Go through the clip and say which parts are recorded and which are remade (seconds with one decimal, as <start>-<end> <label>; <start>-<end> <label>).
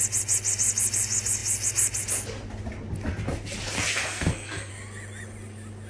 0.0-3.9 recorded; 3.9-4.7 remade; 4.7-5.9 recorded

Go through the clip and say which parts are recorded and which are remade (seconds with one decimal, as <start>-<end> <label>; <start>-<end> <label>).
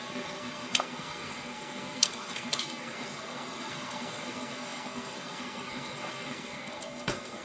0.0-7.4 remade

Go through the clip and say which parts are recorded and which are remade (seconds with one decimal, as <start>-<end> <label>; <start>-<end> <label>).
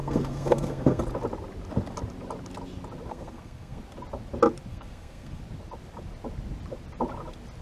0.0-1.0 remade; 1.0-3.1 recorded; 3.1-3.8 remade; 3.8-4.7 recorded; 4.7-5.4 remade; 5.4-7.6 recorded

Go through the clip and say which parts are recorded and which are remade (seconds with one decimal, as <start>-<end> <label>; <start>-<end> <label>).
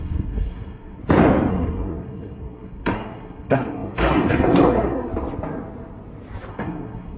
0.0-1.0 remade; 1.0-1.5 recorded; 1.5-5.1 remade; 5.1-6.5 recorded; 6.5-7.2 remade